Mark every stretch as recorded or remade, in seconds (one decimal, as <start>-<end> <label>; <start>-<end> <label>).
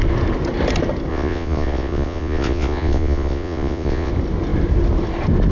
0.0-1.1 recorded; 1.1-4.1 remade; 4.1-5.5 recorded